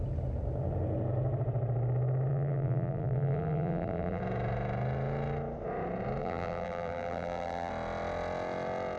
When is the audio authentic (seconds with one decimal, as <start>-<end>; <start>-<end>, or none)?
0.0-2.3; 4.2-6.2; 7.7-9.0